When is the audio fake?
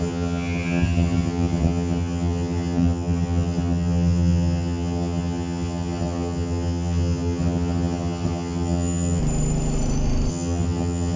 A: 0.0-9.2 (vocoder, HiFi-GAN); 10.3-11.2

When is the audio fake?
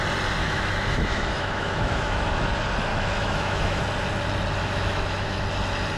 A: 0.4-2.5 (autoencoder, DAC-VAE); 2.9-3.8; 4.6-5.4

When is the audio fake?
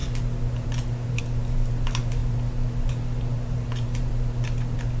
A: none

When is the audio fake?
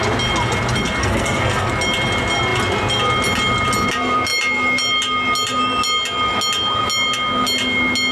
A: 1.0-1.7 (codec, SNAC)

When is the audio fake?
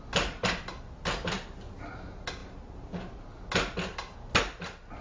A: none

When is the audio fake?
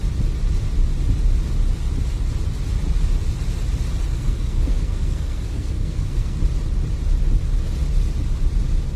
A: 4.1-6.4 (codec, SNAC)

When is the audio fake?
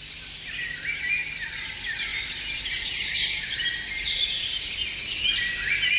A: 0.0-2.1 (vocoder, BigVGAN v2); 2.8-4.9; 5.4-6.0